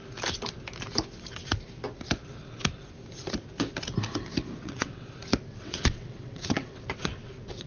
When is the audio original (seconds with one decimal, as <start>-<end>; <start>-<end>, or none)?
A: 0.0-4.6; 5.1-5.5